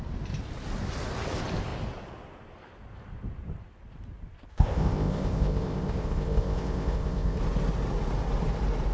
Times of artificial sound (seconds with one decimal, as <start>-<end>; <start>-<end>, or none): 4.5-7.4